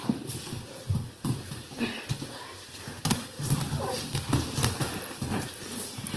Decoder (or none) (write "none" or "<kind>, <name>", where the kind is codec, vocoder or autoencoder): none